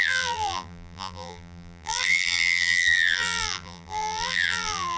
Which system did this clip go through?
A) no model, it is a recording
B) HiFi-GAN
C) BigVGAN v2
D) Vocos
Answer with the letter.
C